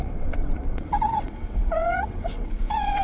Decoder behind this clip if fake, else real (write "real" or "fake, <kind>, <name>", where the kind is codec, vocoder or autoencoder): fake, vocoder, WaveNeXt